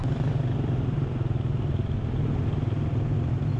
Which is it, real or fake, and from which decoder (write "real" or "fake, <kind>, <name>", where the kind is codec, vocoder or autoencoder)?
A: real